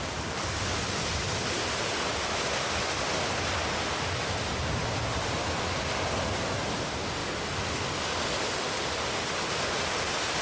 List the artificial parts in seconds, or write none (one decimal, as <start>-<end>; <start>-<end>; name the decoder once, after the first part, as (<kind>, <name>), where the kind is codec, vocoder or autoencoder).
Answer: none